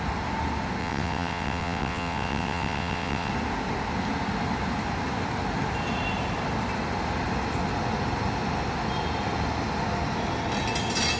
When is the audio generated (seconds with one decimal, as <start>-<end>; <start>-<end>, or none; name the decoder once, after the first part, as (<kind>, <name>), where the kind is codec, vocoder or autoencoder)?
0.8-3.3 (vocoder, WaveNeXt)